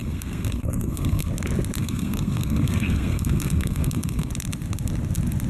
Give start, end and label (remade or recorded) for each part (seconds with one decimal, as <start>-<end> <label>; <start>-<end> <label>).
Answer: 0.0-1.3 remade; 1.3-1.8 recorded; 1.8-4.3 remade; 4.3-5.5 recorded